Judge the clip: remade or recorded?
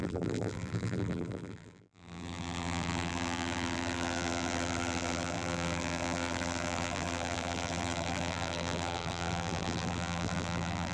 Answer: remade